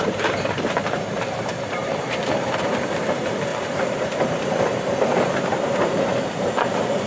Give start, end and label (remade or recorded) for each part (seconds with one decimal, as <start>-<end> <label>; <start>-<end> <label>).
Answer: 0.0-7.1 remade